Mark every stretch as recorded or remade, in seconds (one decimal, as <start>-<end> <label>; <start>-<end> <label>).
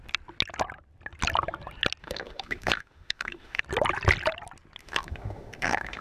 0.0-2.0 recorded; 2.0-3.6 remade; 3.6-4.8 recorded; 4.8-6.0 remade